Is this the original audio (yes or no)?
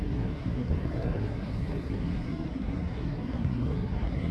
no